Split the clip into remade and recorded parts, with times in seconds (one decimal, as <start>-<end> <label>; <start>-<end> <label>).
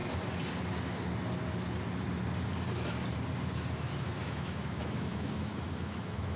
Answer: 0.0-3.8 recorded; 3.8-6.4 remade